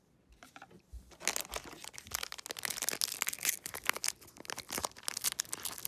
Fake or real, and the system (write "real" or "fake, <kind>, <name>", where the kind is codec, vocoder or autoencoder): real